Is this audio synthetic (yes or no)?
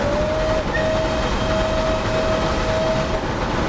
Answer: no